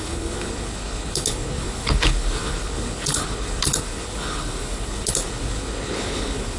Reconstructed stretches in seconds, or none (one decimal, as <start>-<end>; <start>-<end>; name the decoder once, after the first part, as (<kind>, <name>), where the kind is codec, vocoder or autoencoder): 0.0-6.6 (codec, HILCodec)